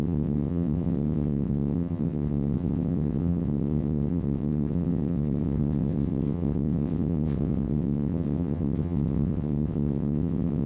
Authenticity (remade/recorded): remade